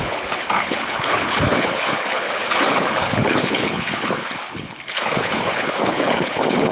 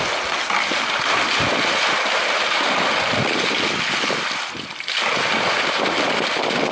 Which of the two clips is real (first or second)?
second